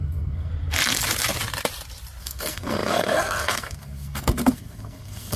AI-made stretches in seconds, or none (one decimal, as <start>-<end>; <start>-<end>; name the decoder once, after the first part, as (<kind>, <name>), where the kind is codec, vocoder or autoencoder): 0.0-0.5 (codec, SNAC); 2.2-5.4